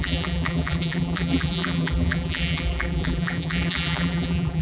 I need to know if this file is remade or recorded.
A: remade